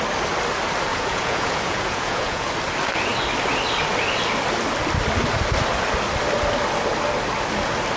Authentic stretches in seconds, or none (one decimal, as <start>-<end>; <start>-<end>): 0.0-0.9; 2.5-8.0